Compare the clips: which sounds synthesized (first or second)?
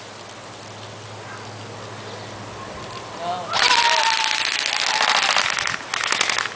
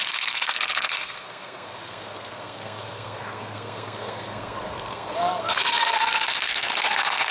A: second